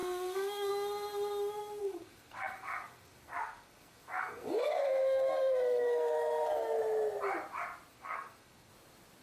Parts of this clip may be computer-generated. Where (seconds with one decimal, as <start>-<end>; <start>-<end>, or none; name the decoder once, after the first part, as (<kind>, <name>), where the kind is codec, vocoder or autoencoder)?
0.0-0.7 (codec, SNAC); 1.8-6.8; 7.9-8.7